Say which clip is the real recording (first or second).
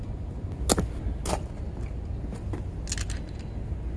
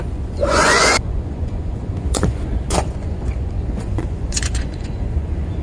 first